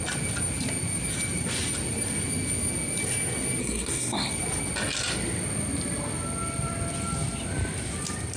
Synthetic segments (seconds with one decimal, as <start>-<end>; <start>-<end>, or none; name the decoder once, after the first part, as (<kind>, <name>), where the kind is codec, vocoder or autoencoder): 3.6-4.3 (codec, SNAC)